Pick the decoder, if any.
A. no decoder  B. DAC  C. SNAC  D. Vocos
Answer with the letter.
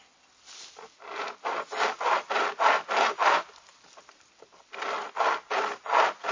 A